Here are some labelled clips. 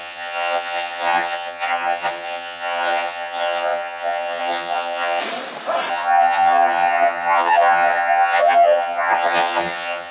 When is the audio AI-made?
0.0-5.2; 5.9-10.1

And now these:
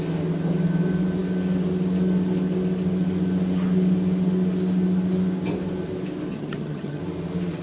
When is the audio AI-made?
6.3-7.0

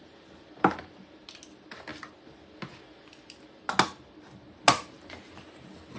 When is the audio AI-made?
none